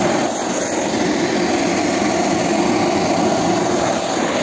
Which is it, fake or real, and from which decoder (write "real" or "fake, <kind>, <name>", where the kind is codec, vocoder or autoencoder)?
real